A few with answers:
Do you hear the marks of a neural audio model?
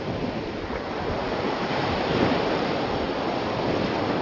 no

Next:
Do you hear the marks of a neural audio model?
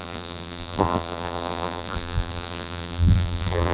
yes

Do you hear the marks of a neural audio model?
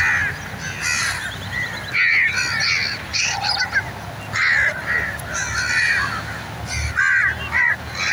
no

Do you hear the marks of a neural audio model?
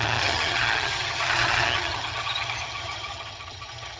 yes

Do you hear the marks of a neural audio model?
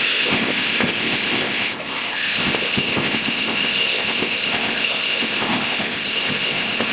yes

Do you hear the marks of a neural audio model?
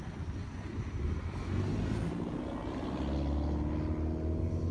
no